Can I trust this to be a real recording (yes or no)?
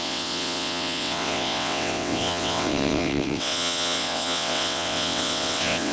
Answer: no